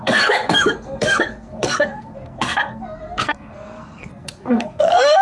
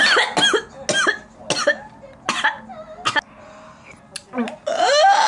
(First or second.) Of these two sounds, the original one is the second